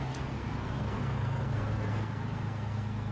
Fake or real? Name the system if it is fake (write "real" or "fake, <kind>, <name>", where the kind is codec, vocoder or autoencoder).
fake, codec, SNAC